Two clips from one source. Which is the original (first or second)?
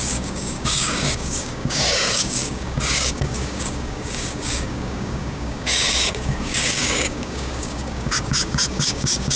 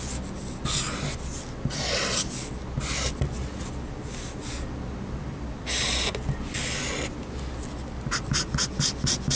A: second